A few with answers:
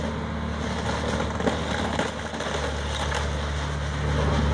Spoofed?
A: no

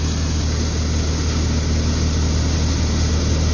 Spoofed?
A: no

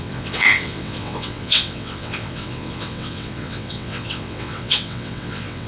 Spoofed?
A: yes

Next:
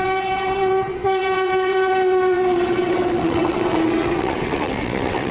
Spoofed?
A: yes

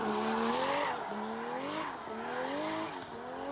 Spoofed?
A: no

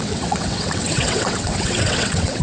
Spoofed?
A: yes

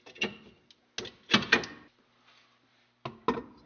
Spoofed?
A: no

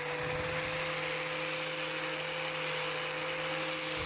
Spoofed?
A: no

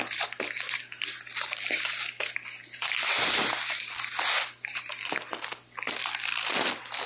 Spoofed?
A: no